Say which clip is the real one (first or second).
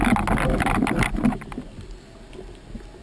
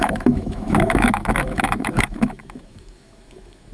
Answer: first